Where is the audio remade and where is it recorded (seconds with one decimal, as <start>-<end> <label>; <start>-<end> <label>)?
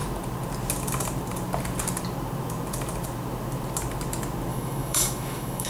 0.0-4.5 recorded; 4.5-5.7 remade